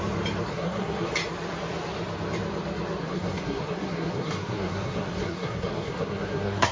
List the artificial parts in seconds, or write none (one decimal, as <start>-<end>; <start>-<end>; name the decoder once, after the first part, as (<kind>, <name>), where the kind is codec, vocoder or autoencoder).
0.5-1.1 (codec, SNAC); 3.0-6.7